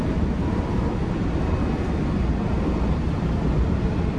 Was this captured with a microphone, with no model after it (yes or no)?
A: yes